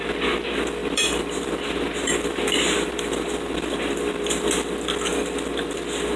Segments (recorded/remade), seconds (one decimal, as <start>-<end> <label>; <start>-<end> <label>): 0.0-0.8 recorded; 0.8-4.5 remade; 4.5-6.2 recorded